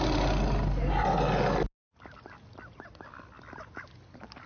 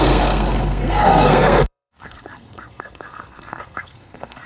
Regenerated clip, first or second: second